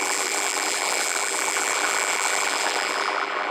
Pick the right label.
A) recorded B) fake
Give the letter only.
B